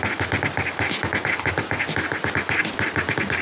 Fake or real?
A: real